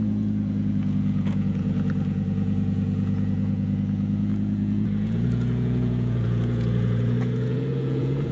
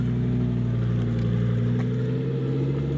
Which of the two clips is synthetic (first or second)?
first